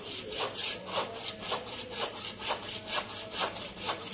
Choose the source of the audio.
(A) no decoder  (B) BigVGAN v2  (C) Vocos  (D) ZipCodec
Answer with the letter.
A